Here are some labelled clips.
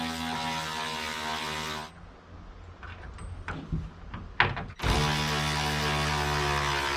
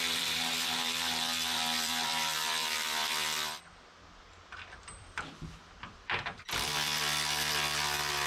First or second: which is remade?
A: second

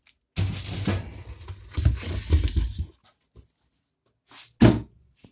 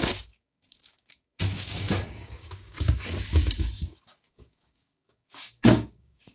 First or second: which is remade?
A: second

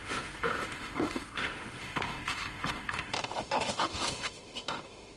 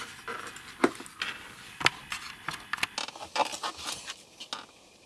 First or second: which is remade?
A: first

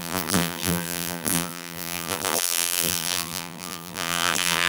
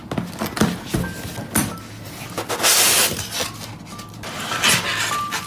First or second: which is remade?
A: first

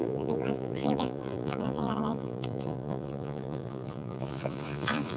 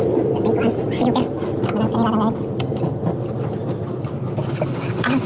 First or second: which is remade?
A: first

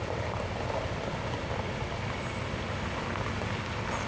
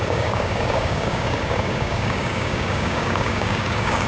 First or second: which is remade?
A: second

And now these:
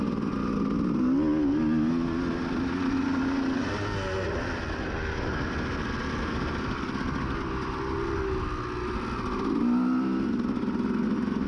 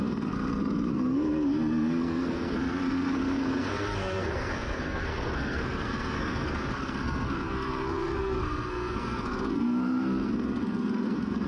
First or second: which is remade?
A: second